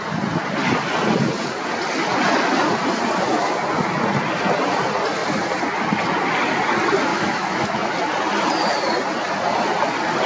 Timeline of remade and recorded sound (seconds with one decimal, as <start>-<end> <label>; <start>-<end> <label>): 0.0-7.1 recorded; 7.1-7.9 remade; 7.9-10.3 recorded